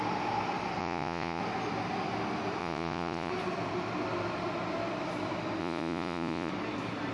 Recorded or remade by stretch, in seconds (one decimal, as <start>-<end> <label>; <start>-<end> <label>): 0.0-0.8 recorded; 0.8-1.4 remade; 1.4-2.6 recorded; 2.6-3.3 remade; 3.3-5.6 recorded; 5.6-6.5 remade; 6.5-7.1 recorded